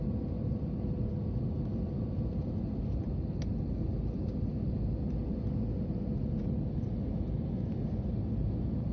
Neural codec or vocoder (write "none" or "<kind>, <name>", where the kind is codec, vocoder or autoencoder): none